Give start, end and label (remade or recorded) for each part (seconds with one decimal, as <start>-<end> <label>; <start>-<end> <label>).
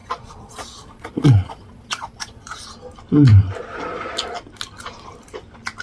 0.0-2.6 remade; 2.6-5.8 recorded